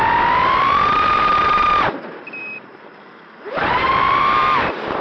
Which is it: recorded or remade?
remade